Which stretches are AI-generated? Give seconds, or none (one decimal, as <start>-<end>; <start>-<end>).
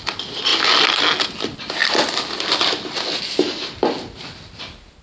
none